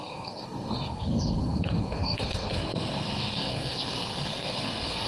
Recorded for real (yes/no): no